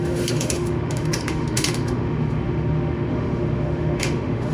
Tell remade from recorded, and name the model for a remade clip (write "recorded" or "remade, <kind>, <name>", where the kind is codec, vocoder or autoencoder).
remade, autoencoder, DAC-VAE